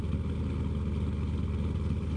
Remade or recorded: recorded